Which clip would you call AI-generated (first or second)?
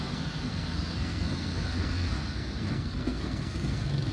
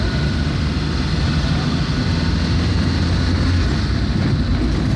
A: first